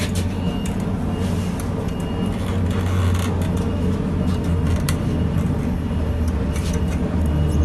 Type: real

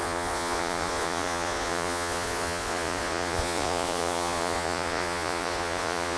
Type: fake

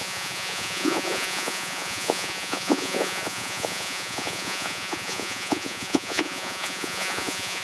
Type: fake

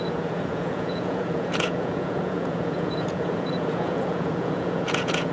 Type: fake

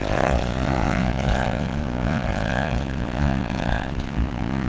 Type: fake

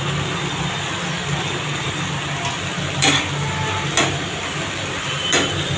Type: real